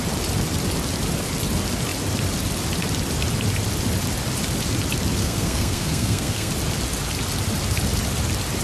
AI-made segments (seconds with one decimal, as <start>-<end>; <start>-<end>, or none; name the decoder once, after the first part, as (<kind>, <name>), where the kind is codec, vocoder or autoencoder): 5.2-6.5 (codec, SNAC)